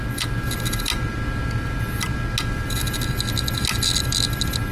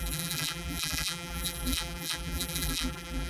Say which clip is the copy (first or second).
second